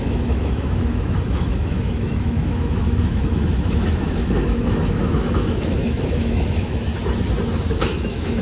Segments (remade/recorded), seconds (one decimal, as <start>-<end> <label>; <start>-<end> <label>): 0.0-6.9 remade; 6.9-7.7 recorded; 7.7-8.4 remade